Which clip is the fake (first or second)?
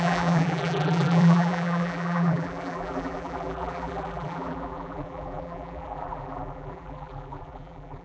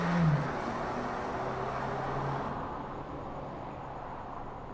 first